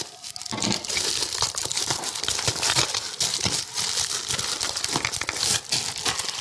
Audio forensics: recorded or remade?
recorded